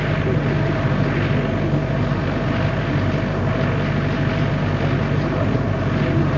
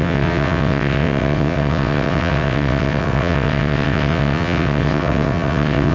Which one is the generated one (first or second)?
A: second